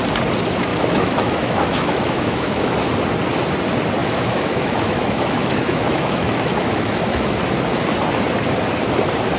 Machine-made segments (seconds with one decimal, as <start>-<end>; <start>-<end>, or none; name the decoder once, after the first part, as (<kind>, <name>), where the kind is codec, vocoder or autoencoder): 0.7-2.7 (autoencoder, DAC-VAE); 4.0-7.3